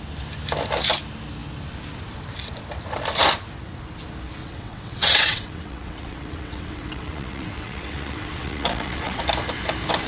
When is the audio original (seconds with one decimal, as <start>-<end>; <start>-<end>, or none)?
0.0-4.4; 9.2-10.1